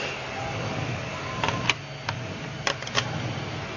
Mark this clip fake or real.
real